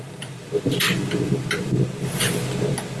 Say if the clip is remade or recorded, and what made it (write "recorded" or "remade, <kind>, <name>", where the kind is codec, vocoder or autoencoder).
recorded